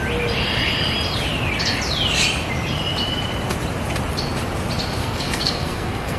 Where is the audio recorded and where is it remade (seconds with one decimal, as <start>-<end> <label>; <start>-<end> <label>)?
0.0-5.0 recorded; 5.0-6.2 remade